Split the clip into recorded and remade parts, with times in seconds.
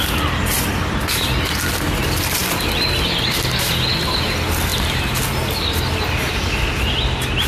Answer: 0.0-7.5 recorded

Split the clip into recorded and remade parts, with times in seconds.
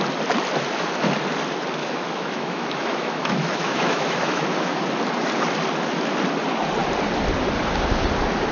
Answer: 0.0-1.8 recorded; 1.8-4.8 remade; 4.8-8.5 recorded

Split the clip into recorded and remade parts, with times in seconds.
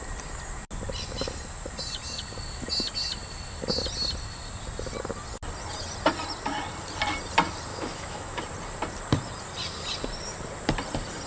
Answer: 0.0-7.7 recorded; 7.7-8.4 remade; 8.4-11.3 recorded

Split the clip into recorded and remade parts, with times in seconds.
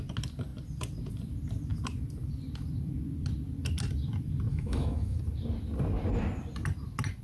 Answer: 0.0-4.5 recorded; 4.5-5.2 remade; 5.2-7.2 recorded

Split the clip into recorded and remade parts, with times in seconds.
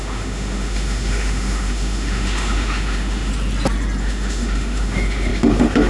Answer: 0.0-3.3 remade; 3.3-4.0 recorded; 4.0-5.9 remade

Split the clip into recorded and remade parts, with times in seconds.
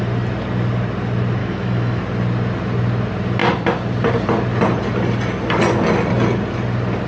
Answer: 0.0-1.4 recorded; 1.4-2.0 remade; 2.0-7.1 recorded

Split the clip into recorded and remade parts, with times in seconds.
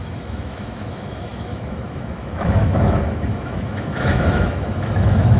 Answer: 0.0-5.4 remade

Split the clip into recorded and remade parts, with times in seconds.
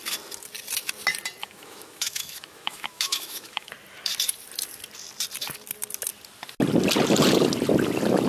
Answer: 0.0-1.4 recorded; 1.4-3.7 remade; 3.7-8.3 recorded